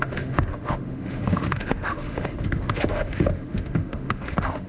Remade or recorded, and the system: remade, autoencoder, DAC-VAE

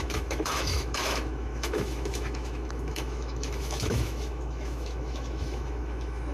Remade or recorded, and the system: remade, autoencoder, DAC-VAE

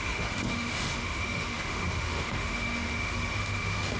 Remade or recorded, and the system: remade, autoencoder, DAC-VAE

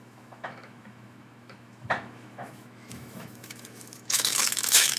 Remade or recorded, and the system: remade, autoencoder, DAC-VAE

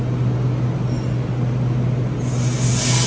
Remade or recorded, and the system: recorded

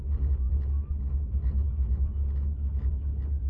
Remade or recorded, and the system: recorded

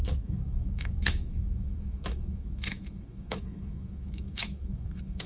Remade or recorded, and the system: remade, autoencoder, DAC-VAE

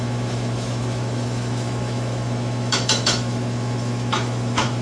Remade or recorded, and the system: remade, autoencoder, DAC-VAE